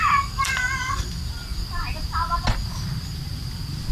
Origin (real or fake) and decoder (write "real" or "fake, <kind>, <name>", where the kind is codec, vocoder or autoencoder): real